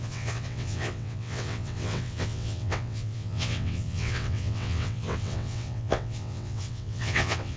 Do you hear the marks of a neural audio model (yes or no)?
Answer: yes